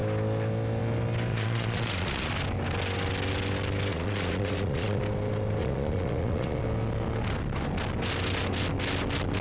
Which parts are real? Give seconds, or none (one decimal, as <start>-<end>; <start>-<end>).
0.0-1.3; 2.3-3.9; 5.0-5.6; 6.6-9.4